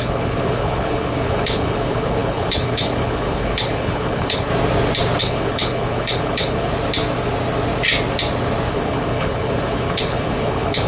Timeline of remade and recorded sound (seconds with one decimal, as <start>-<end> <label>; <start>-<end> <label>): 0.0-4.5 remade; 4.5-5.2 recorded; 5.2-6.7 remade; 6.7-8.7 recorded; 8.7-10.9 remade